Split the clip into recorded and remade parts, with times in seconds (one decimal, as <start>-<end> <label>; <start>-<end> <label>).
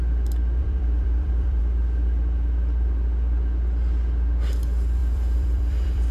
0.0-0.6 recorded; 0.6-1.6 remade; 1.6-5.0 recorded; 5.0-6.1 remade